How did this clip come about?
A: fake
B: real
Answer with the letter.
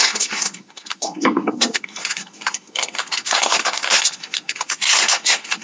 A